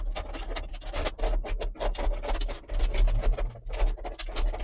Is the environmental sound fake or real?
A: real